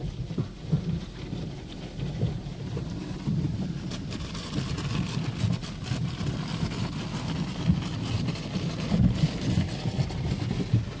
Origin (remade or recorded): remade